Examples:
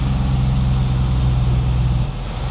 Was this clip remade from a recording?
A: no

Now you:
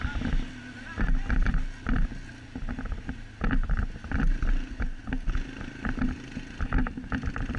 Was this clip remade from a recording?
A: no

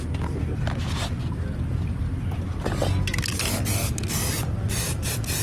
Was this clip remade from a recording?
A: no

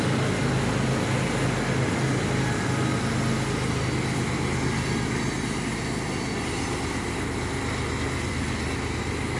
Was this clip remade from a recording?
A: no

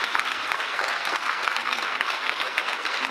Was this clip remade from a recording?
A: yes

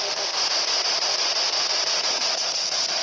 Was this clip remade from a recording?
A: no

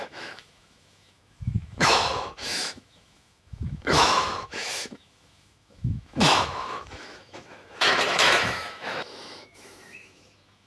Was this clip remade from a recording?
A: yes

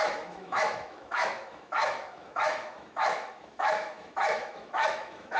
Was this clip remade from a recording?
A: yes